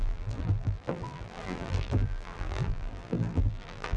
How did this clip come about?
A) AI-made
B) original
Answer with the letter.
A